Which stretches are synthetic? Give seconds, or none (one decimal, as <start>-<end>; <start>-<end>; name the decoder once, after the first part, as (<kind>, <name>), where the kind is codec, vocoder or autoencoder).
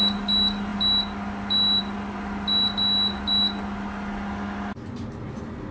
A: none